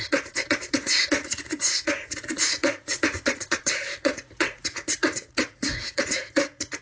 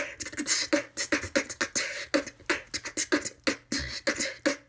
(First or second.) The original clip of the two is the second